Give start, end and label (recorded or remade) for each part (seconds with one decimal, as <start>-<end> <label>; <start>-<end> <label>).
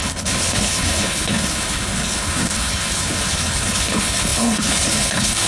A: 0.0-5.5 remade